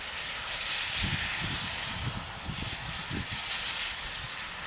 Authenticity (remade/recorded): recorded